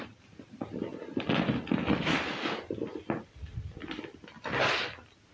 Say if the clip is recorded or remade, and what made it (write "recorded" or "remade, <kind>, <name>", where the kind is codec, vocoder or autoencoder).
recorded